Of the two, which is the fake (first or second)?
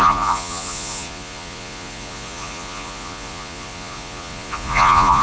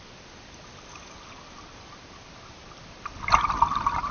first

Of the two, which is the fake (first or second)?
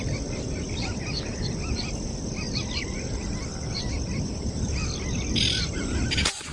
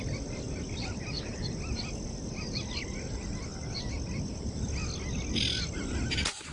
first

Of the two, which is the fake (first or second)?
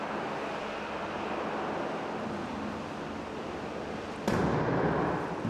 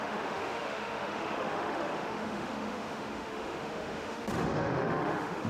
second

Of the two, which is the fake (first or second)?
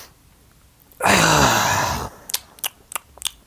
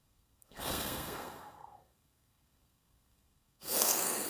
second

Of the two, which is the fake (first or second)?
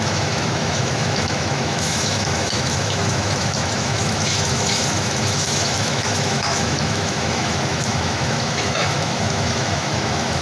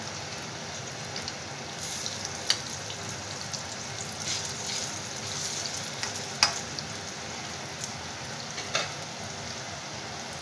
first